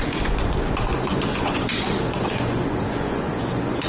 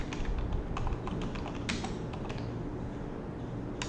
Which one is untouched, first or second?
second